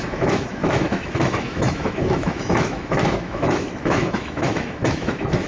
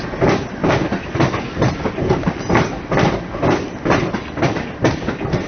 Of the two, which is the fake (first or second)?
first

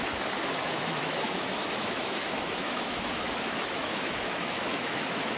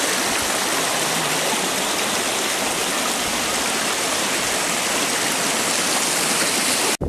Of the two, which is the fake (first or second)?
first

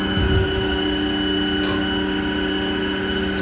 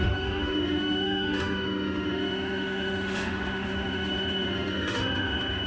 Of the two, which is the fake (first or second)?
second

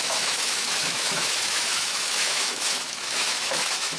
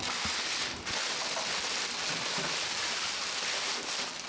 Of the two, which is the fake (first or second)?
first